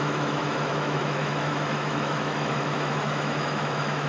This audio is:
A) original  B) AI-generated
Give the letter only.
B